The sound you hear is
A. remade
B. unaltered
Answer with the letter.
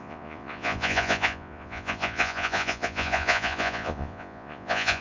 A